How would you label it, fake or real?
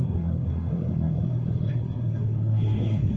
fake